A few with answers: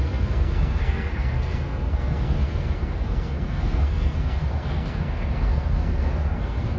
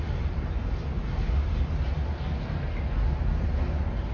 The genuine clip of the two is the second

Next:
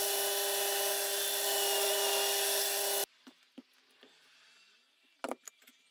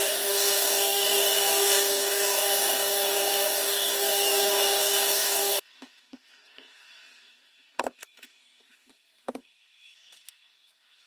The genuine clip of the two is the first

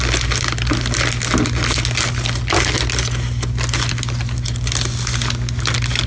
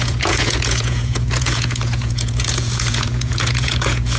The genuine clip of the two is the first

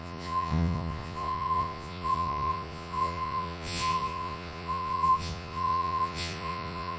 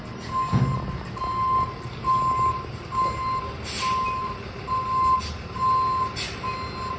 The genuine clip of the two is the second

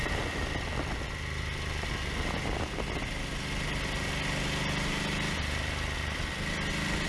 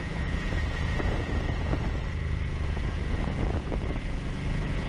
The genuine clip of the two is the first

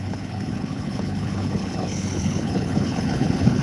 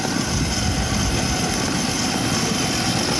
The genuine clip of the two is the second